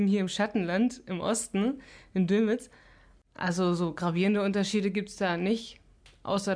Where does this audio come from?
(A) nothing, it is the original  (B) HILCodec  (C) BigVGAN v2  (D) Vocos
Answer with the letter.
A